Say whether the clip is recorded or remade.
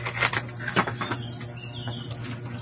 recorded